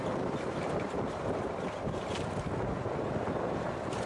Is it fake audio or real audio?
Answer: real